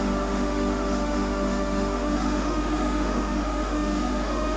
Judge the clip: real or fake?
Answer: fake